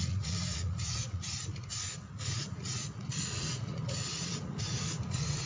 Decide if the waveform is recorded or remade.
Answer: remade